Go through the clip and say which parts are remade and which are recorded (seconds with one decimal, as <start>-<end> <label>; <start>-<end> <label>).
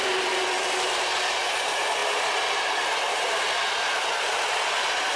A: 0.0-5.2 recorded